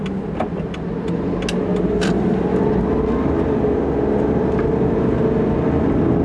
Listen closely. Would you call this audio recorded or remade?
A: recorded